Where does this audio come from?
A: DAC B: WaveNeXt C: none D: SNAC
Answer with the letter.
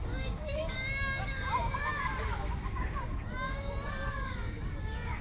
A